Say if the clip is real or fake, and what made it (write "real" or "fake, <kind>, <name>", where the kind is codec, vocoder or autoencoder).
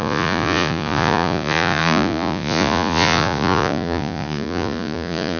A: fake, vocoder, Vocos